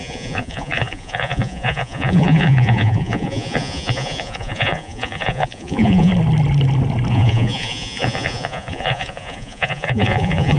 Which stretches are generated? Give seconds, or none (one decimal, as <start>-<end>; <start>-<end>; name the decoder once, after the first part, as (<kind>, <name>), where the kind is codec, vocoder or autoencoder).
0.0-6.1 (vocoder, Vocos); 7.1-10.6